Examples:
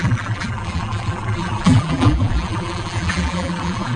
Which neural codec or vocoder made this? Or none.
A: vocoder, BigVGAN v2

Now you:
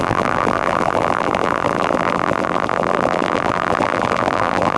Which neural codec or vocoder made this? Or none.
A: vocoder, BigVGAN v2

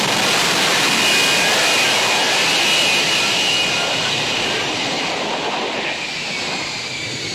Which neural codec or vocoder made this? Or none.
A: none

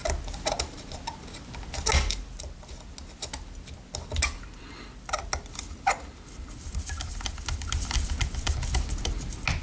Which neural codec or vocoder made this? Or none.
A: none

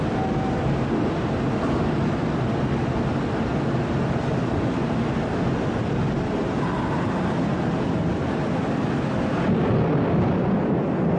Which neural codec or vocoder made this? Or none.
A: none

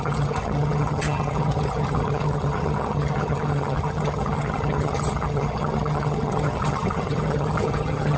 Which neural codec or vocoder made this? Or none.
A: vocoder, HiFi-GAN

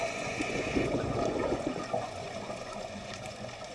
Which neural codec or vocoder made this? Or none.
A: vocoder, Vocos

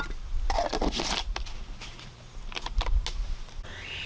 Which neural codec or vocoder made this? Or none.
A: none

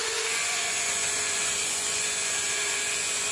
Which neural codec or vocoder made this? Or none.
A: vocoder, Vocos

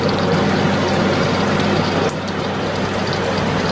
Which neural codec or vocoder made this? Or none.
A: none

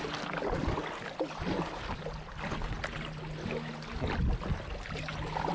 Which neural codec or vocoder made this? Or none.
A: none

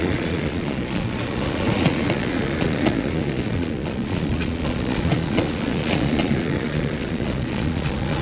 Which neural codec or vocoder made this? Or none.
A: vocoder, Vocos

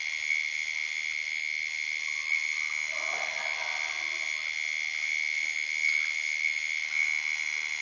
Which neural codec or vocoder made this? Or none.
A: none